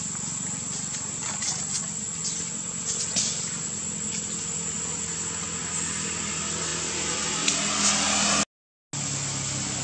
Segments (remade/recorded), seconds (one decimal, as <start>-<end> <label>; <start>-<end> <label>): 0.0-9.8 recorded